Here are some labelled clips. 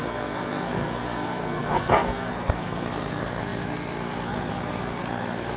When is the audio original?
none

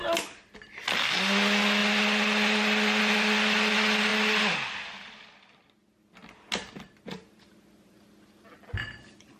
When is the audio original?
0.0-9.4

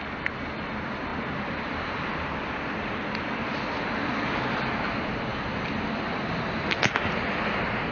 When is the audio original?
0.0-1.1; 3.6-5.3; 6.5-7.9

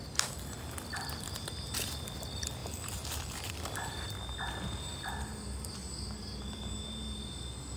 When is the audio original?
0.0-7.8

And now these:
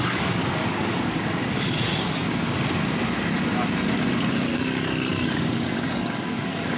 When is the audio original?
2.2-4.2